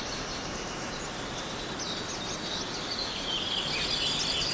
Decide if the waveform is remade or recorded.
recorded